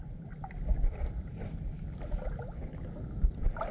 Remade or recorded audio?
recorded